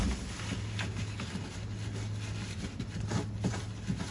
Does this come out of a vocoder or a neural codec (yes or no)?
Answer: no